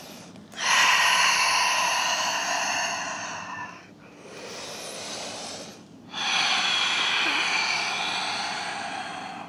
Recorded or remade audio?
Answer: recorded